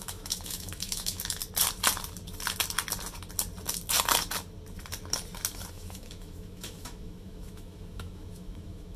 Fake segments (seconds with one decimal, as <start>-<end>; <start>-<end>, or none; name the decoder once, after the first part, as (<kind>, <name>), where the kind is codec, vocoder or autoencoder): 0.0-1.4 (autoencoder, DAC-VAE); 5.7-9.0

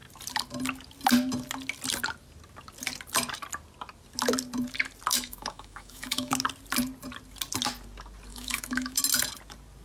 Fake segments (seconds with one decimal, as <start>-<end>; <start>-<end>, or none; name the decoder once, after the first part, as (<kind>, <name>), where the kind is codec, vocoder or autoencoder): 5.1-6.3 (autoencoder, DAC-VAE); 8.3-9.0

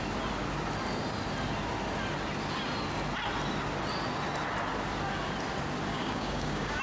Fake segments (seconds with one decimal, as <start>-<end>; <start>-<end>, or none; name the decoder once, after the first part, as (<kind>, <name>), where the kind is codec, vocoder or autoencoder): 5.9-6.8 (codec, DAC)

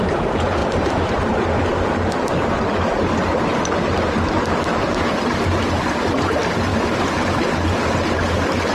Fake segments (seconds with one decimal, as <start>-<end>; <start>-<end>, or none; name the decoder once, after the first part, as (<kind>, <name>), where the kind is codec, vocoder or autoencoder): 0.6-1.1 (vocoder, BigVGAN v2); 6.7-7.3